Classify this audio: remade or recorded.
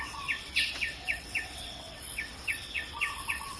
remade